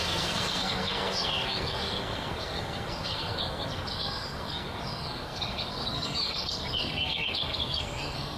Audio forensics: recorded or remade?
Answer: remade